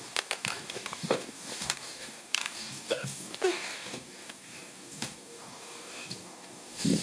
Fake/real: fake